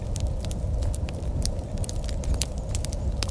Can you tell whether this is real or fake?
fake